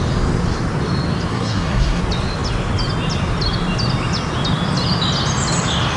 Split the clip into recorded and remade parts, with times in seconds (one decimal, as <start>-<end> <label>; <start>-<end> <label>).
0.0-1.3 recorded; 1.3-2.0 remade; 2.0-6.0 recorded